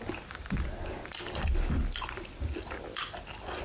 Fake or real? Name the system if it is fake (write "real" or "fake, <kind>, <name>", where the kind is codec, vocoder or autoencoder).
real